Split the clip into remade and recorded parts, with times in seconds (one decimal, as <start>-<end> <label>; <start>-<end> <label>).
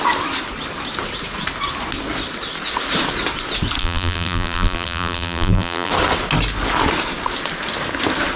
0.0-3.8 recorded; 3.8-5.9 remade; 5.9-8.4 recorded